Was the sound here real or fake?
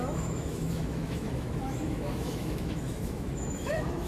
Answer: fake